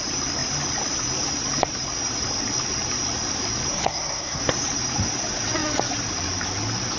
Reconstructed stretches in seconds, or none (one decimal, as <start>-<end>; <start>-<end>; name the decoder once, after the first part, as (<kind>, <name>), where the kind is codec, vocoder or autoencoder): 3.7-4.4 (codec, SNAC)